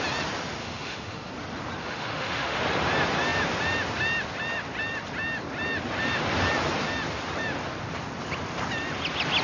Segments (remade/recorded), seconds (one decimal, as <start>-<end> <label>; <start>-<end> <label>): 0.0-0.6 recorded; 0.6-1.3 remade; 1.3-1.8 recorded; 1.8-2.6 remade; 2.6-9.4 recorded